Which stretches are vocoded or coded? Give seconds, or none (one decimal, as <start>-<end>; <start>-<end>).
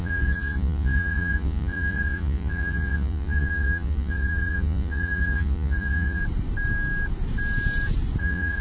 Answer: 0.0-6.2; 8.2-8.6